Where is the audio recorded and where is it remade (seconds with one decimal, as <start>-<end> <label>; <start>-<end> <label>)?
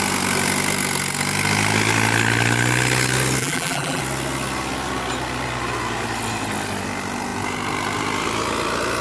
0.0-3.4 recorded; 3.4-4.0 remade; 4.0-9.0 recorded